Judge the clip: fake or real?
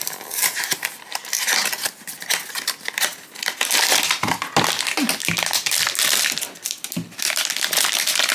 real